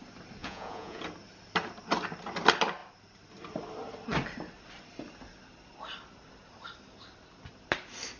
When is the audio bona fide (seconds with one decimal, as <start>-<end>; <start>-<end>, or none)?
0.0-0.4; 1.0-8.2